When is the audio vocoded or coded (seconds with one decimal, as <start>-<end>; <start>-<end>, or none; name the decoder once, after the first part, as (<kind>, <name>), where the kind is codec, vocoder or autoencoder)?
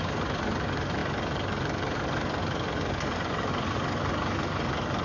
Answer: 0.0-5.0 (codec, DAC)